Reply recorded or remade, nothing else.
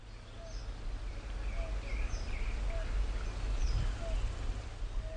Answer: recorded